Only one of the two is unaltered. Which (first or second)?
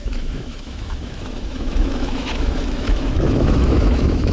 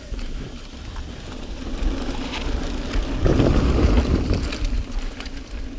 second